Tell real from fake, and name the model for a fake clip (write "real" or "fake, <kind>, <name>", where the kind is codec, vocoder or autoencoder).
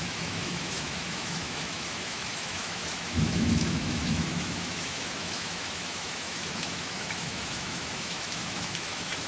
fake, autoencoder, DAC-VAE